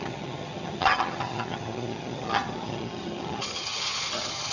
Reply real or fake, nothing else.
fake